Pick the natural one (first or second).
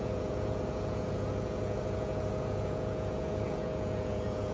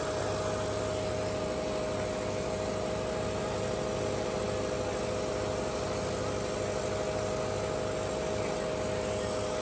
second